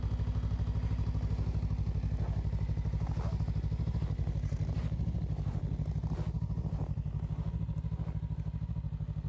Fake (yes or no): no